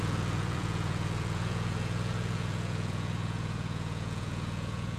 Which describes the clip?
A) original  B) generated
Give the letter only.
B